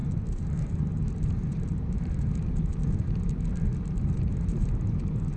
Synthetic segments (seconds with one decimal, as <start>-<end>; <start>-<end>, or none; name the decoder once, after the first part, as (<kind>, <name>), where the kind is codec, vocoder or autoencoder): 0.0-2.8 (vocoder, BigVGAN v2); 4.0-5.4